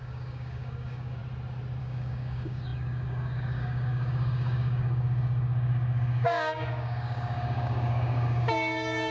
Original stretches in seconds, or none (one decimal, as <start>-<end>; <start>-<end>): 1.2-1.8